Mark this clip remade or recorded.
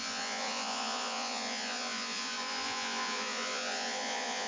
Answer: remade